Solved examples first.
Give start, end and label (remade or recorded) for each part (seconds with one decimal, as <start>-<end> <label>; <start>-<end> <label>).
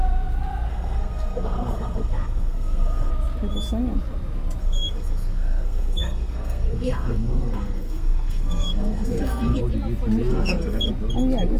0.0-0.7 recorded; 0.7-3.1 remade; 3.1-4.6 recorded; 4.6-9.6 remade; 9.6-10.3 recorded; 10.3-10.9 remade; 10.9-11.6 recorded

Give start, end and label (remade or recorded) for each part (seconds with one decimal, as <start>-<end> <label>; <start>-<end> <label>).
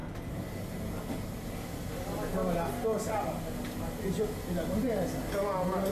0.0-5.9 recorded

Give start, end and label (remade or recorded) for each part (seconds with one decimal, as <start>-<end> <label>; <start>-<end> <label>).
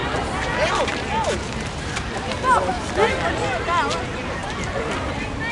0.0-5.5 recorded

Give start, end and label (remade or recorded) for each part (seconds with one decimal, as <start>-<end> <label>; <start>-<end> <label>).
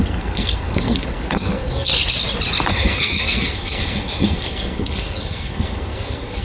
0.0-1.9 remade; 1.9-2.7 recorded; 2.7-6.4 remade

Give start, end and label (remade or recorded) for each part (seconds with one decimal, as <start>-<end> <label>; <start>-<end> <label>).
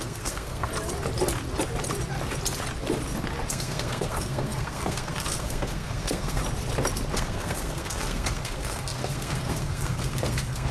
0.0-0.7 remade; 0.7-3.5 recorded; 3.5-6.4 remade; 6.4-7.1 recorded; 7.1-10.7 remade